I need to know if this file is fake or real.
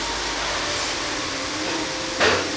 real